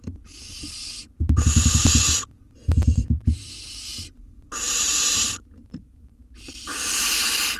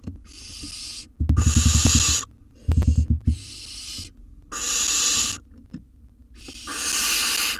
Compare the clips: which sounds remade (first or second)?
first